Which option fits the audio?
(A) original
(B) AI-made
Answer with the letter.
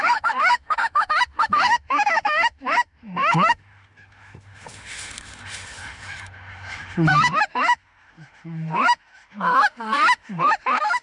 B